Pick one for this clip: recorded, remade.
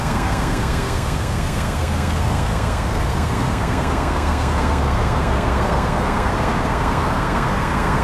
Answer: remade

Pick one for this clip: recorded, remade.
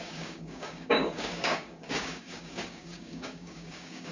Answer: remade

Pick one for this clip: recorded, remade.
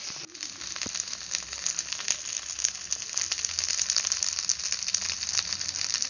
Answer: recorded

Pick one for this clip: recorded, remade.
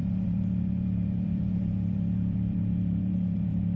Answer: remade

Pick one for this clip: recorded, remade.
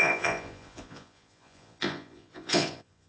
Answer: remade